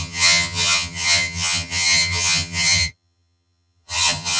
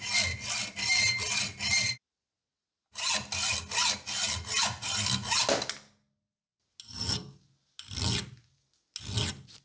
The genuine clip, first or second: second